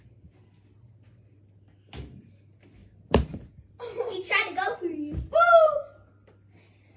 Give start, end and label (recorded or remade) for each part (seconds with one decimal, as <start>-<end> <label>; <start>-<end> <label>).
0.0-7.0 recorded